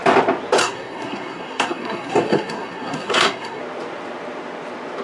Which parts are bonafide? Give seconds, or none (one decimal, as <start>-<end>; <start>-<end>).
0.0-0.6; 3.6-5.0